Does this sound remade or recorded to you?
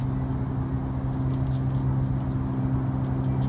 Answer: recorded